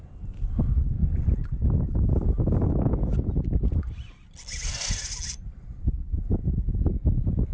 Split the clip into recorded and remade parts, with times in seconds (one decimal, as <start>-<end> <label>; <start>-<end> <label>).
0.0-7.5 recorded